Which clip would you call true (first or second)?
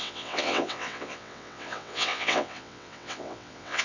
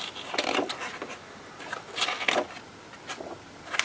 second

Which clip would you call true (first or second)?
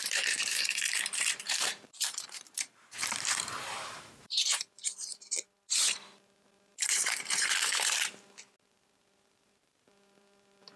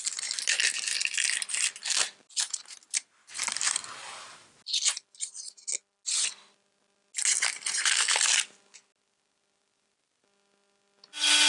second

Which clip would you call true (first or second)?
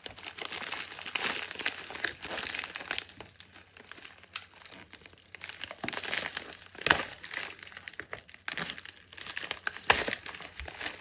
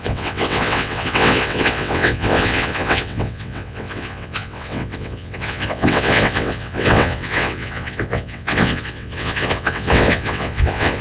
first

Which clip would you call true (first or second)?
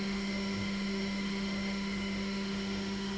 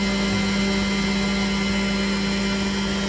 second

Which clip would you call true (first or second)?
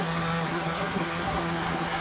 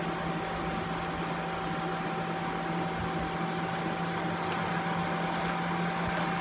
second